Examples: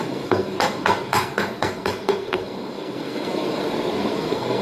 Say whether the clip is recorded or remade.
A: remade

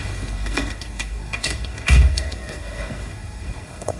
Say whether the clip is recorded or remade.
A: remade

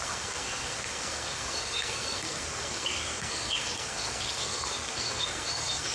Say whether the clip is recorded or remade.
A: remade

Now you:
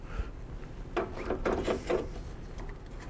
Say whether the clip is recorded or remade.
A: recorded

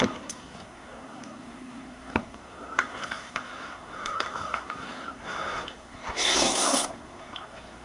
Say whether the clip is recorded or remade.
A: remade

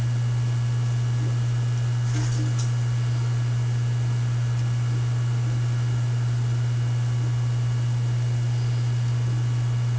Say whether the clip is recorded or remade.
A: recorded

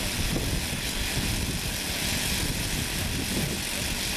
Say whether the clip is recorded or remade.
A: recorded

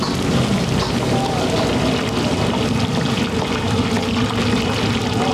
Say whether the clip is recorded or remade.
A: recorded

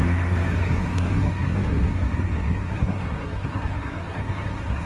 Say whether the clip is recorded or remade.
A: remade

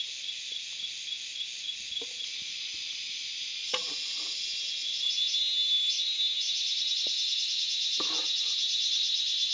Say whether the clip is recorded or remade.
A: recorded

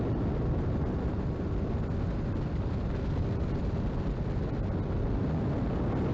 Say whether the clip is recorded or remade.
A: recorded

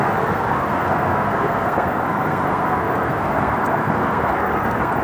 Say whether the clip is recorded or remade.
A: remade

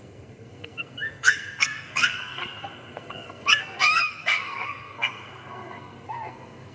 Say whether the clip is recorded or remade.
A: remade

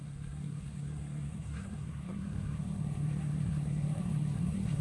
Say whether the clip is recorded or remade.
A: remade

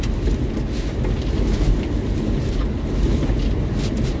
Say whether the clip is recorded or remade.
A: recorded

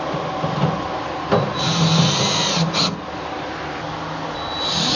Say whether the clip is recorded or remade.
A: recorded